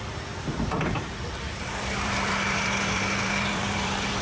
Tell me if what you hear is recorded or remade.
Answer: remade